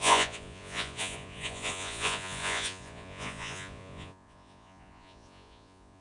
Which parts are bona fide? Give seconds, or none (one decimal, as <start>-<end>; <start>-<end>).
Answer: none

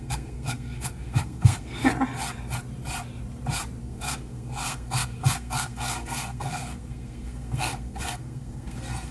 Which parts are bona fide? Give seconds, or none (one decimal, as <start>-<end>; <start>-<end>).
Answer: 1.8-3.8

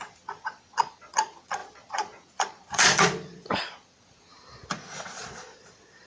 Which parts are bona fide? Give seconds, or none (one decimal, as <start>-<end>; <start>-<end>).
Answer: none

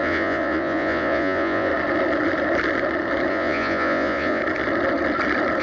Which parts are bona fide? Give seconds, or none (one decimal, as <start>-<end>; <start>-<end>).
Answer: 1.7-3.3; 4.4-5.6

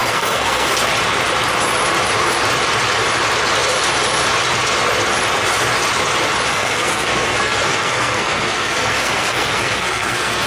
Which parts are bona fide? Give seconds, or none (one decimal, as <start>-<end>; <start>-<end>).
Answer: 0.7-6.5

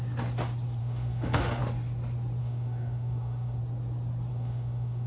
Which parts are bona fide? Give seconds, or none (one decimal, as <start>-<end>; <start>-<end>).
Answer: 0.0-0.8; 1.6-2.4; 3.6-4.3

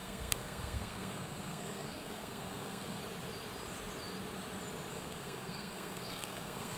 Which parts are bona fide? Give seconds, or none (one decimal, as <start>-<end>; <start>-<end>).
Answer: 3.0-4.9

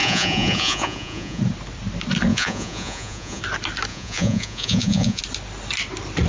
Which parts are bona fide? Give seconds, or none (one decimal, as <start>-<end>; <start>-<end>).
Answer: 1.4-2.3; 3.4-3.9; 5.2-6.3